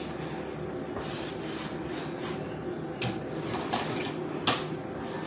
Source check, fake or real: real